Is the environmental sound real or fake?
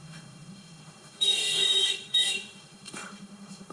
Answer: fake